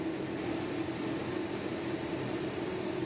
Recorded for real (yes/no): yes